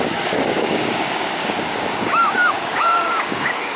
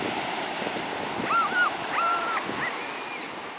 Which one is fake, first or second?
first